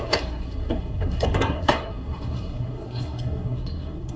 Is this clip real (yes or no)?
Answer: no